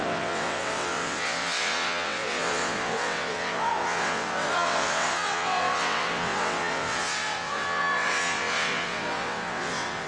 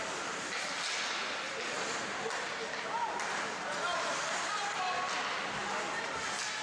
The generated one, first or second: first